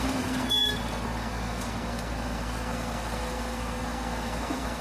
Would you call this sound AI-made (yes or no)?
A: yes